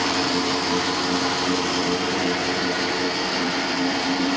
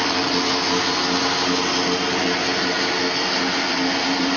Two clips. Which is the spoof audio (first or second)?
first